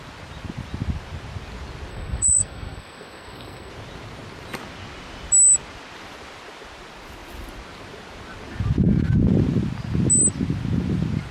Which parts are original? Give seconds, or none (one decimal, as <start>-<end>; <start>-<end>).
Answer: 0.0-1.9; 3.7-11.3

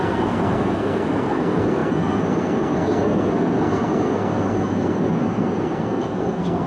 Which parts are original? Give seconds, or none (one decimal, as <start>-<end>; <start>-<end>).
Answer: none

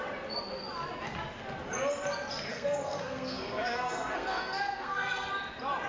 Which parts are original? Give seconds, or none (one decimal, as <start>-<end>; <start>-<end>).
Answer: 0.0-2.5; 5.3-5.9

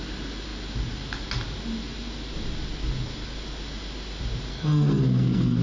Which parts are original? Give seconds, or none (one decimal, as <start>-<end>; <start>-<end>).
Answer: 0.0-4.5

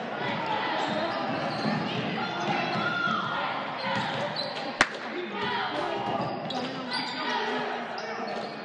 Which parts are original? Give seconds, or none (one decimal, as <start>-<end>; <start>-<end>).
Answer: 0.0-5.6; 6.2-8.6

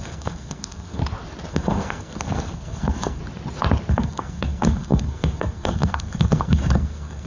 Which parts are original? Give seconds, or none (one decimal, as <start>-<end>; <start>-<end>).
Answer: 1.0-1.5; 3.2-3.9

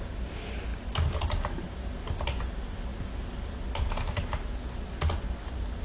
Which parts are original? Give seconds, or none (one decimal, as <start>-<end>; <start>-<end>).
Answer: 0.0-5.8